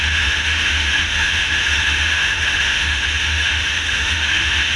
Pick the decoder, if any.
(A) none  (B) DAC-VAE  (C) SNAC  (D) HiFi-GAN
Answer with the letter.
B